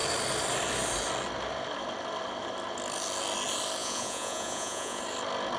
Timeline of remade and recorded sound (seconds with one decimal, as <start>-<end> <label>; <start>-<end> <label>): 0.0-3.8 recorded; 3.8-5.0 remade; 5.0-5.6 recorded